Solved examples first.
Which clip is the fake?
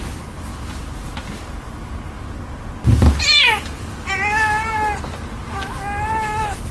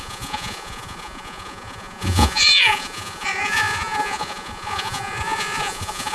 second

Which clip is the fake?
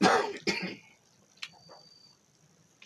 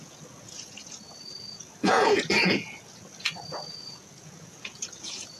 second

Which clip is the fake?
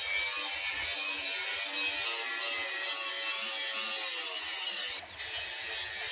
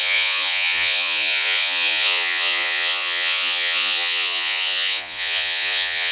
second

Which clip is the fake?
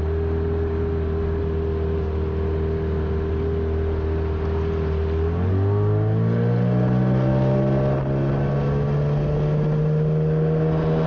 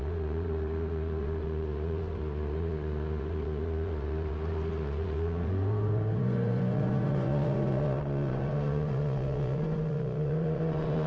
second